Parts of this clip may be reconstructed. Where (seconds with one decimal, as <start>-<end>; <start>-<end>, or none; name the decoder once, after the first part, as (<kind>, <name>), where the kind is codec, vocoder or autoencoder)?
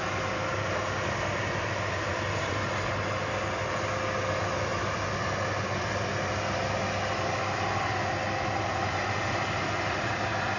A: none